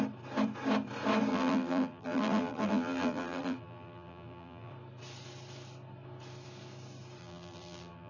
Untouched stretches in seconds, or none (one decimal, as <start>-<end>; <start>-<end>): 0.0-1.3; 4.7-7.2